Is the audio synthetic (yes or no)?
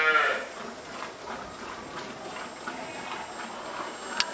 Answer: no